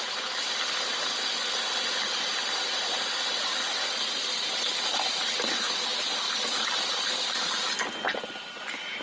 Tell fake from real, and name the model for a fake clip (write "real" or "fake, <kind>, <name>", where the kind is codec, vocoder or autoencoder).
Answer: real